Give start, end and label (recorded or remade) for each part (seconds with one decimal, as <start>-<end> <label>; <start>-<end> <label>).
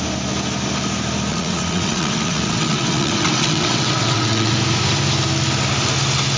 0.0-1.3 recorded; 1.3-4.5 remade; 4.5-6.4 recorded